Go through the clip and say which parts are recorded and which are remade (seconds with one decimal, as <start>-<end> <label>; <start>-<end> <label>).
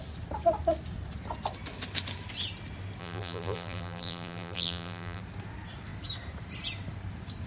0.0-3.0 recorded; 3.0-5.2 remade; 5.2-7.5 recorded